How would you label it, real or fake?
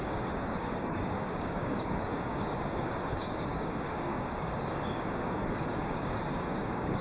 fake